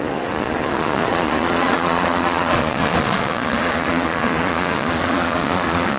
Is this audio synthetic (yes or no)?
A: yes